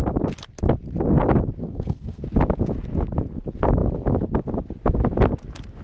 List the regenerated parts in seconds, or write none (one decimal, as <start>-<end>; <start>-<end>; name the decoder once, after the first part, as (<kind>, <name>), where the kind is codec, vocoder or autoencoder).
1.6-2.2 (codec, SNAC)